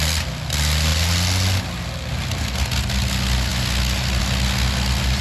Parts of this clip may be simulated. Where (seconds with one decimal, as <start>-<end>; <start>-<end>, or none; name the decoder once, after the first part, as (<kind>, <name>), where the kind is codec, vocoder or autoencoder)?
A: none